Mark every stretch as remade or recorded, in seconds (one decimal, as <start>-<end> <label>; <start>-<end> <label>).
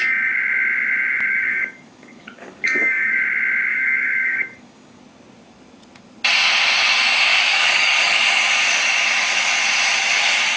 0.0-1.3 recorded; 1.3-3.2 remade; 3.2-3.7 recorded; 3.7-5.0 remade; 5.0-7.3 recorded; 7.3-8.2 remade; 8.2-10.6 recorded